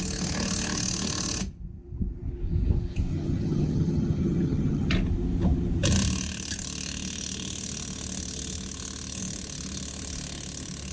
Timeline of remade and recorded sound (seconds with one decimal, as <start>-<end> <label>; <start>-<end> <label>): 0.0-3.1 recorded; 3.1-4.9 remade; 4.9-10.9 recorded